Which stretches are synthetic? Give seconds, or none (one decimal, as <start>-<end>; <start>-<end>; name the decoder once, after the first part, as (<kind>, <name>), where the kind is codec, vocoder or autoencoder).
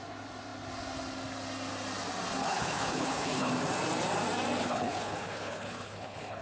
2.4-3.5 (codec, HILCodec); 4.6-6.4